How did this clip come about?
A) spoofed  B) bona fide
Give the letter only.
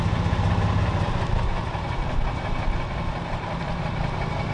B